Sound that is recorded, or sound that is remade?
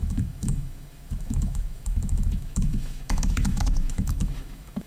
remade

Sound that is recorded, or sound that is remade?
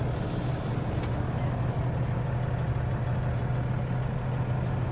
recorded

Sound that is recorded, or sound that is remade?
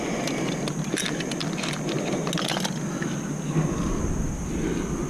recorded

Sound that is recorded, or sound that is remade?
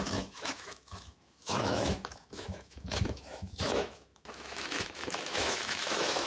remade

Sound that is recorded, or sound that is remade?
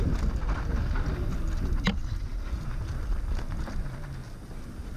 recorded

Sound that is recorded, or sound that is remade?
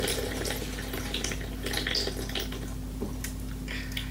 recorded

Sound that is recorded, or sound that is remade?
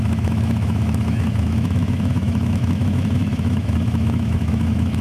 remade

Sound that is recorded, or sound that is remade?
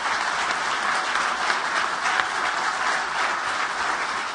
recorded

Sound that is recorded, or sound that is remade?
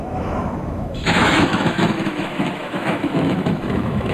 remade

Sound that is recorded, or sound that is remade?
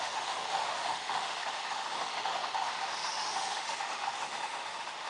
remade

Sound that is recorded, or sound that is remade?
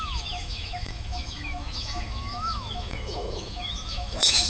remade